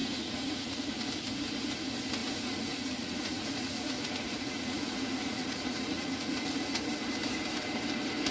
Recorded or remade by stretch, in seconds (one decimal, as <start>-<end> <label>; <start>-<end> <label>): 0.0-0.9 remade; 0.9-2.2 recorded; 2.2-6.8 remade; 6.8-8.3 recorded